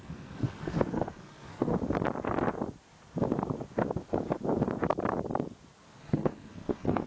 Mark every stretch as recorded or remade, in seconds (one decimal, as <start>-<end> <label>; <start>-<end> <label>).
0.0-1.7 remade; 1.7-6.0 recorded; 6.0-7.1 remade